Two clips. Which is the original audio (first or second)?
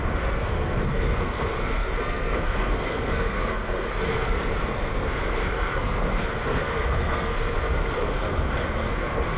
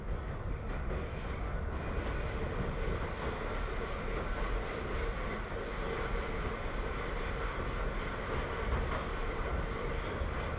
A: second